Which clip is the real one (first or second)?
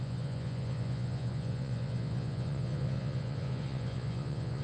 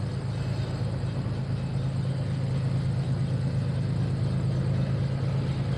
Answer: second